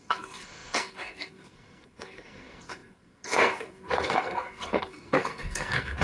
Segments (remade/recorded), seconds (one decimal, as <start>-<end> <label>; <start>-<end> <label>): 0.0-6.0 remade